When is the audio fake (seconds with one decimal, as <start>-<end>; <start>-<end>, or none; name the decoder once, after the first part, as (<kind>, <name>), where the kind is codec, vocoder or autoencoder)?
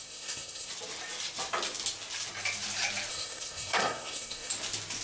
0.0-0.7 (codec, SNAC); 3.1-4.5